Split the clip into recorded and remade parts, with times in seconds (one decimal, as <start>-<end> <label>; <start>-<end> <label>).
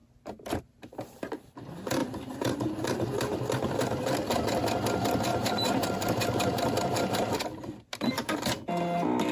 0.0-5.3 recorded; 5.3-8.1 remade; 8.1-9.3 recorded